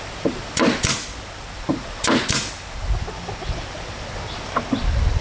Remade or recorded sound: recorded